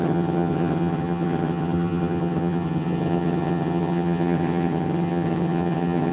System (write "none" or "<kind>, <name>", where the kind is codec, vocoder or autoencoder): vocoder, HiFi-GAN